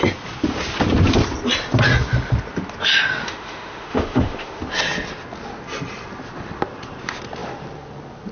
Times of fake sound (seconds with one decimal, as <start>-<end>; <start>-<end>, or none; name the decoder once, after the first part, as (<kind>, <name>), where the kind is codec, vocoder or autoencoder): 3.2-4.6 (autoencoder, DAC-VAE)